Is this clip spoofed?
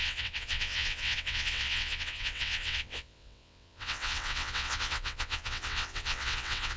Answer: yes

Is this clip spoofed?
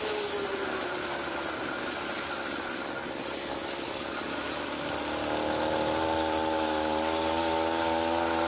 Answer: no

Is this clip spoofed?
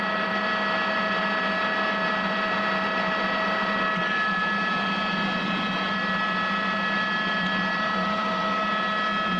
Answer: no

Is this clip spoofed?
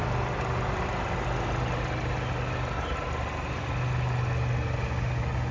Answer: no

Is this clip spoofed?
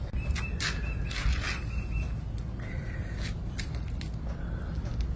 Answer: no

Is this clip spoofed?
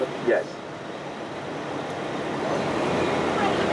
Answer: no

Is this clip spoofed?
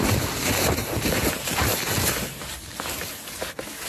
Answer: no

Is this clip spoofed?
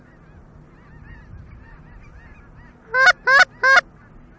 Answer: no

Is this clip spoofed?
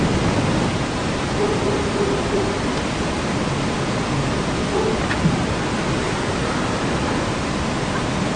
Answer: no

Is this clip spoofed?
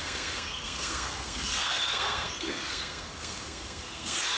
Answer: yes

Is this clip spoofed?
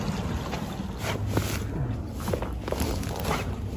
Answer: no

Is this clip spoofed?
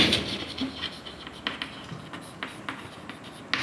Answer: no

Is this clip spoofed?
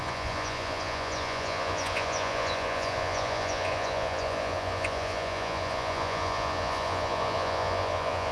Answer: yes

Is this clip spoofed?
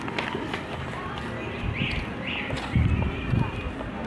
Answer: no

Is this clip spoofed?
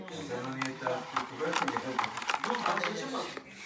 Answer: no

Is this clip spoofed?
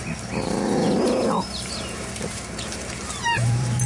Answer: yes